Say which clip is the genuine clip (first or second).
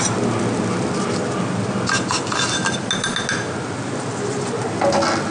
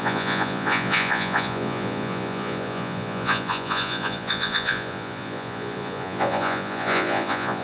first